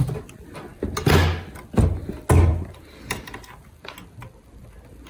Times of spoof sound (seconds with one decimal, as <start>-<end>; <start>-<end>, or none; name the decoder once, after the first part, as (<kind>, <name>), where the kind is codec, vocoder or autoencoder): 2.5-3.3 (vocoder, BigVGAN v2)